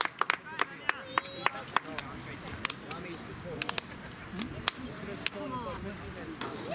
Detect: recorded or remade recorded